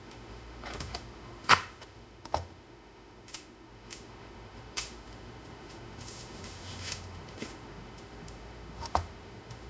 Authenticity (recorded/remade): remade